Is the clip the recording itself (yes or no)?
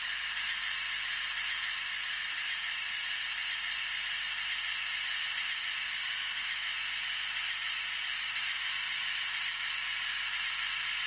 yes